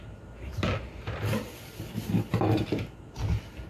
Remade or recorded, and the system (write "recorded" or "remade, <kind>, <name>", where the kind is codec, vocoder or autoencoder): recorded